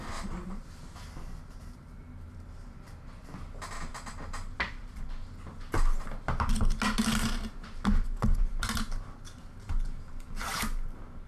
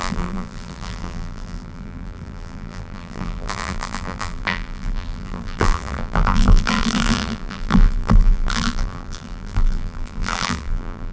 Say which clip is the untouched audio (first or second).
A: first